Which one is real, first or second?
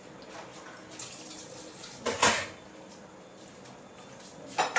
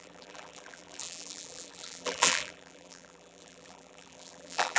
first